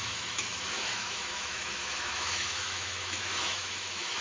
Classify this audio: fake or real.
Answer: fake